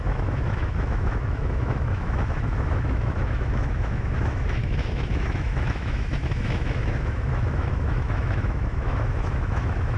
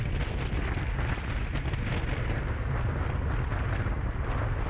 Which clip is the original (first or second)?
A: second